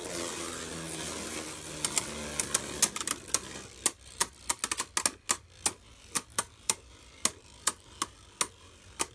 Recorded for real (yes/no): yes